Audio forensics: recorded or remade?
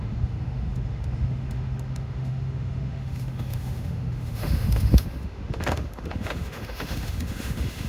remade